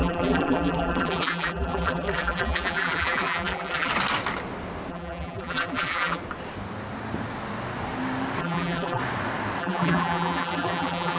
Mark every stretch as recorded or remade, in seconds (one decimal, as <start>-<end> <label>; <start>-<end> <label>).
0.0-3.9 remade; 3.9-4.9 recorded; 4.9-6.2 remade; 6.2-8.4 recorded; 8.4-9.0 remade; 9.0-9.6 recorded; 9.6-11.2 remade